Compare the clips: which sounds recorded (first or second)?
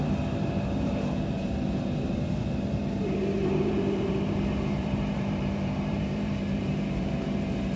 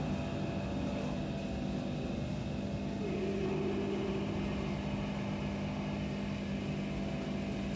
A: second